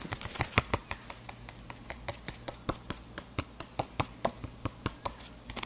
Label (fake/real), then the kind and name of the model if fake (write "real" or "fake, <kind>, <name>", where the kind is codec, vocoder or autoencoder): real